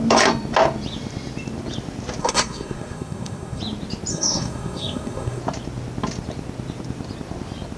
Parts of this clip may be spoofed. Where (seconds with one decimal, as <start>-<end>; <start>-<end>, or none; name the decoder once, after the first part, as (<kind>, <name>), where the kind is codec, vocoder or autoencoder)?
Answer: 2.2-3.6 (codec, SNAC); 4.1-5.4